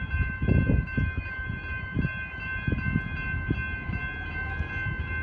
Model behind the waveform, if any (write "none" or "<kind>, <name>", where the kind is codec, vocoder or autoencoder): none